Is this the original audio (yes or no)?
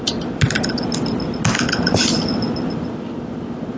yes